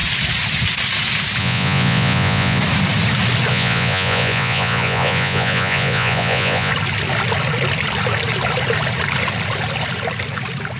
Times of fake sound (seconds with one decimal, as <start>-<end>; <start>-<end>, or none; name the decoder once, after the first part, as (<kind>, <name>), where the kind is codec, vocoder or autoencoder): 1.4-2.6 (vocoder, Vocos); 3.5-6.7